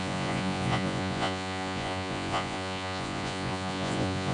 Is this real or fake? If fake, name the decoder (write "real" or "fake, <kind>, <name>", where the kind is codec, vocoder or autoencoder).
fake, vocoder, Vocos